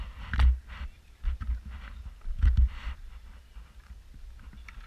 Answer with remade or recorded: recorded